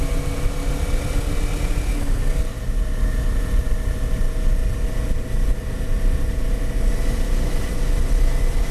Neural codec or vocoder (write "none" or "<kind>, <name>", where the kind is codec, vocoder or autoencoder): none